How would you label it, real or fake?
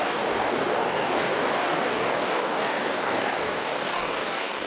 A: fake